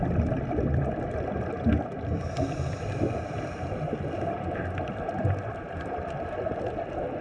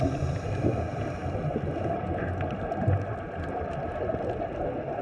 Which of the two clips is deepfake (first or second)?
first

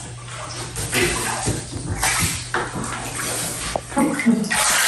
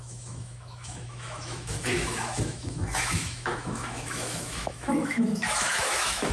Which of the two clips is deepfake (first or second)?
second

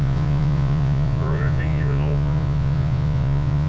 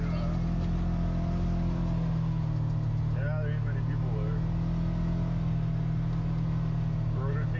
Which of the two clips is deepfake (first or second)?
first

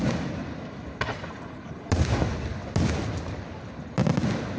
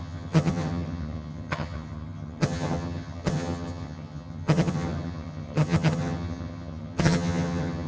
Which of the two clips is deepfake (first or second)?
second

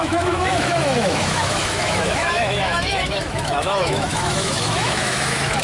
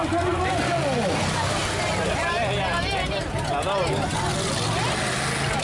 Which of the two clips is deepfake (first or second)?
first